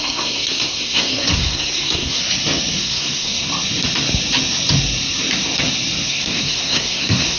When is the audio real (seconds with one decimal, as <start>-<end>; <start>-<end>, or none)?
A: 2.2-2.8; 3.5-6.1